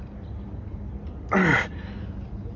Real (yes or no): yes